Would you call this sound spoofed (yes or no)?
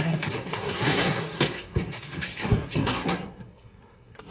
yes